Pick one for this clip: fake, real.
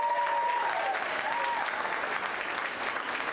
real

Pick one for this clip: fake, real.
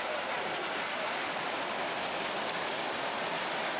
real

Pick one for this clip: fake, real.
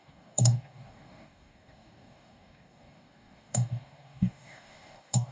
fake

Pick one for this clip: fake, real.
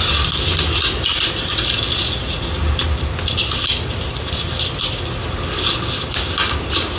real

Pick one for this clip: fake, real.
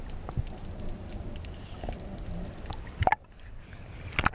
real